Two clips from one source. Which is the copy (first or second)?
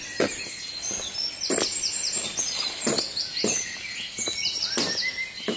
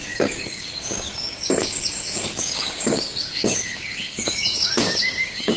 second